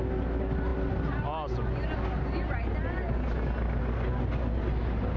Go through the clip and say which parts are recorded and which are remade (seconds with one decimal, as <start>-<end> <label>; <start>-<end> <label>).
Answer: 0.0-5.2 recorded